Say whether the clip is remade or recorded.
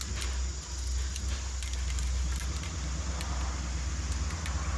recorded